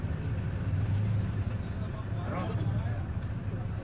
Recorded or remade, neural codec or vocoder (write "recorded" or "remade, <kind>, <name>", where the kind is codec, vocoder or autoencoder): recorded